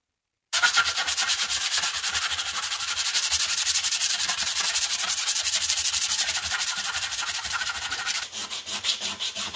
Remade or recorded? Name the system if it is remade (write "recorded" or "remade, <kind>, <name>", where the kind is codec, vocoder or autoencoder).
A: remade, vocoder, BigVGAN v2